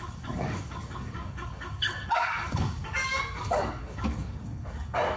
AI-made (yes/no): yes